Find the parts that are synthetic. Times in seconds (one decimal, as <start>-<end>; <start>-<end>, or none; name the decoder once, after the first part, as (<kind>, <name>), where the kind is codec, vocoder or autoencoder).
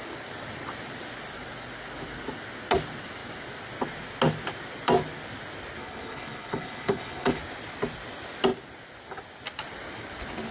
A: 5.8-7.4 (codec, HILCodec)